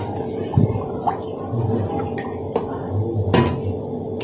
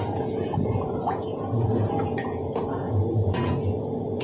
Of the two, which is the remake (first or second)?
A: second